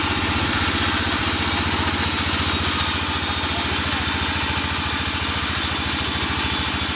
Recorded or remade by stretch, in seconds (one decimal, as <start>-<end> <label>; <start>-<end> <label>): 0.0-7.0 recorded